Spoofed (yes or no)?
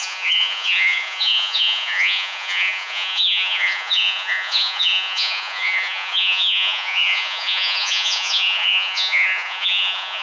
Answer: yes